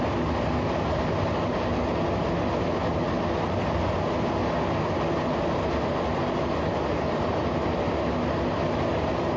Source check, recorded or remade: recorded